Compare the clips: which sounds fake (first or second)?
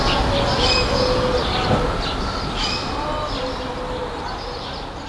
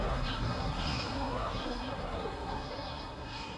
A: second